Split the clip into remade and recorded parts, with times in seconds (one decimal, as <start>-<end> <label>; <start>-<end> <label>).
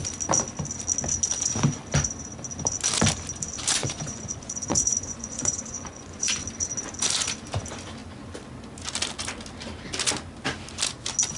0.0-3.8 recorded; 3.8-6.4 remade; 6.4-11.4 recorded